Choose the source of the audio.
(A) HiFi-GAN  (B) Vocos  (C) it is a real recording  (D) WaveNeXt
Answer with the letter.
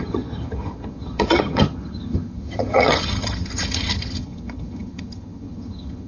A